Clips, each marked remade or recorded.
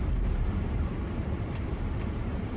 remade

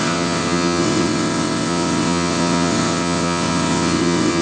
remade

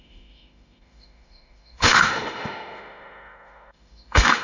remade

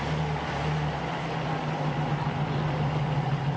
recorded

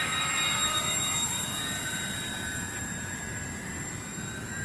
remade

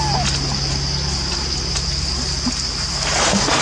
recorded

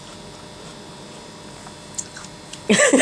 recorded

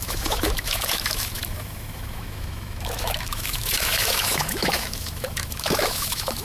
remade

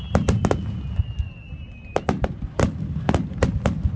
recorded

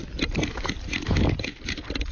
recorded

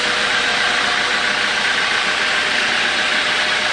recorded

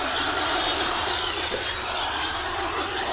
remade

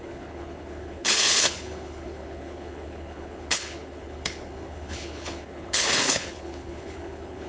remade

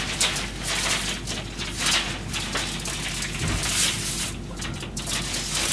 recorded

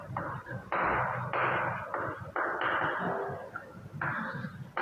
recorded